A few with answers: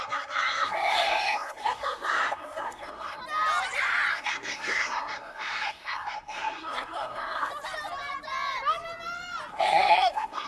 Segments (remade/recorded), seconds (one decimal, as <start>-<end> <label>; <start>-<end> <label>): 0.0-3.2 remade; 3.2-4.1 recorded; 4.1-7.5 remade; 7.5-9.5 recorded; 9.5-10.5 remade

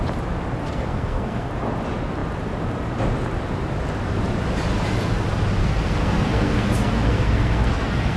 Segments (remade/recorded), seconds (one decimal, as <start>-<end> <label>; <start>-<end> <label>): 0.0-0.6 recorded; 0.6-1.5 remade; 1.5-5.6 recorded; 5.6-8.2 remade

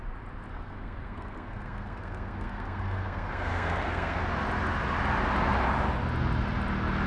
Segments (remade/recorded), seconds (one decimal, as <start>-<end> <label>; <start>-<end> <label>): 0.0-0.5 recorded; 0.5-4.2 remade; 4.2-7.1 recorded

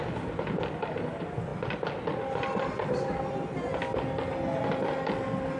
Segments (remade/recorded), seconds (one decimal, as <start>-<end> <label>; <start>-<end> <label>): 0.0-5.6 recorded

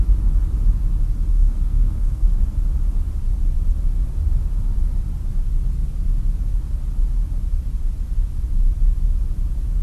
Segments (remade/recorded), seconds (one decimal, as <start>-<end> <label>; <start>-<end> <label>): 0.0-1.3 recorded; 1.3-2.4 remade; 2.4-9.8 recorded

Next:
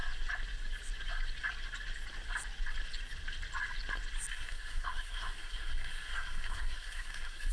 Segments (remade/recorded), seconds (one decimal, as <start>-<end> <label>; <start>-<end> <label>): 0.0-4.3 recorded; 4.3-7.5 remade

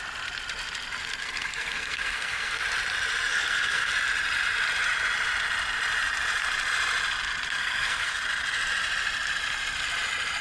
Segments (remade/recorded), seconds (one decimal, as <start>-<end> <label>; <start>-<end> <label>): 0.0-1.2 recorded; 1.2-2.6 remade; 2.6-3.3 recorded; 3.3-3.9 remade; 3.9-7.6 recorded; 7.6-8.2 remade; 8.2-10.4 recorded

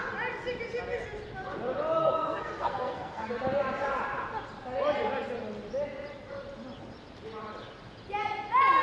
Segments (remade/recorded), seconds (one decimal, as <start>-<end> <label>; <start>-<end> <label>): 0.0-2.0 recorded; 2.0-3.3 remade; 3.3-8.8 recorded